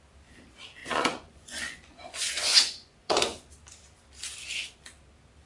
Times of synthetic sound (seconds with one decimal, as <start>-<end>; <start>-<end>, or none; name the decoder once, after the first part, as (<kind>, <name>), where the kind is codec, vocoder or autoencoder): 0.8-3.5 (vocoder, Vocos)

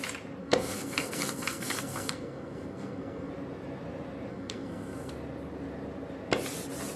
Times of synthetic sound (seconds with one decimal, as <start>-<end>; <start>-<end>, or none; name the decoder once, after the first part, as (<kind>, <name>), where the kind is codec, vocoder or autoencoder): 0.4-3.3 (codec, SNAC); 4.3-5.1

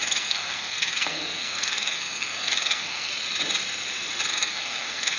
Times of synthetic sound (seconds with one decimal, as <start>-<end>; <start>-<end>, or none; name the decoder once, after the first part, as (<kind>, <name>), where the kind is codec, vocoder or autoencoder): 0.0-3.1 (codec, SNAC); 4.3-5.2

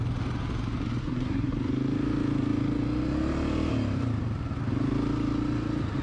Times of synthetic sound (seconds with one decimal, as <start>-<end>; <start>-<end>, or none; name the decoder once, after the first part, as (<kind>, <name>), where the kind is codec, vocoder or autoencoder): 1.0-1.6 (codec, SNAC)